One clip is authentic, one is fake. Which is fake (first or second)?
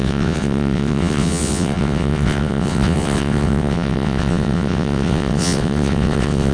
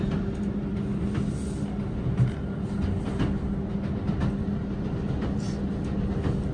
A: first